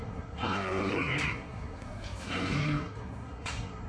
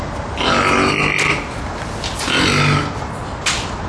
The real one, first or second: second